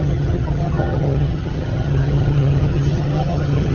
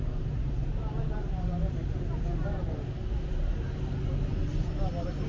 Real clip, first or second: second